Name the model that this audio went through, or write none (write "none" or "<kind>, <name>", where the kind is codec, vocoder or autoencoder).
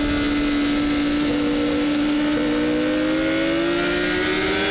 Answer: none